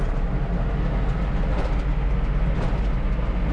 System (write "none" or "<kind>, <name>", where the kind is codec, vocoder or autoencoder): none